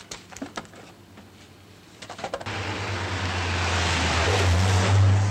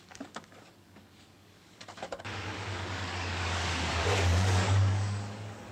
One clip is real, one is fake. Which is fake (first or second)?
second